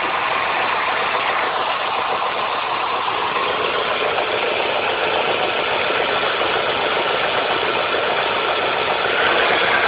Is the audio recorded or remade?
recorded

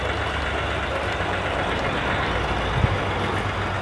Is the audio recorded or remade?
recorded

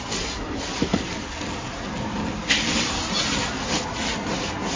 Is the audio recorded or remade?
recorded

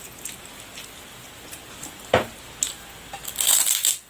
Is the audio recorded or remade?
recorded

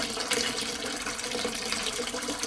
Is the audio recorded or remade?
remade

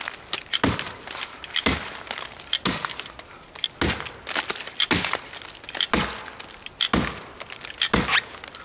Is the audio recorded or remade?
recorded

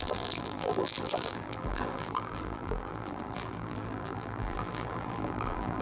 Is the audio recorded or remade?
remade